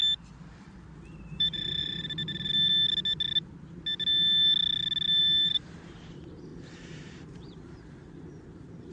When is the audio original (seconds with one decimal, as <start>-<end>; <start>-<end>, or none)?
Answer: 0.0-1.2; 2.5-5.2